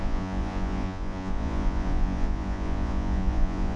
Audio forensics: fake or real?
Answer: fake